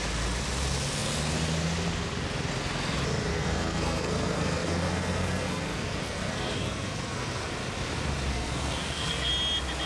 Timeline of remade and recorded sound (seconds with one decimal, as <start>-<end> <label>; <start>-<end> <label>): 0.0-3.3 recorded; 3.3-7.5 remade; 7.5-8.3 recorded; 8.3-9.3 remade; 9.3-9.9 recorded